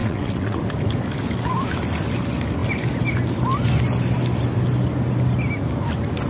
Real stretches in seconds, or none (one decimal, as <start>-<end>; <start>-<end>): 0.6-6.3